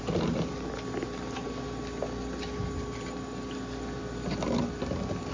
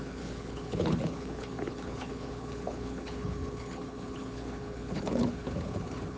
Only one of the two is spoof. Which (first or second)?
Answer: second